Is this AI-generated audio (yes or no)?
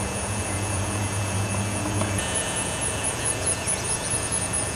yes